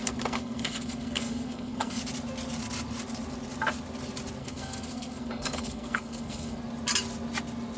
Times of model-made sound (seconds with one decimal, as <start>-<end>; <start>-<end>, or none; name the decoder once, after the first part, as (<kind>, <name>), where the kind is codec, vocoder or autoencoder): 0.0-2.0 (codec, SNAC); 4.4-6.6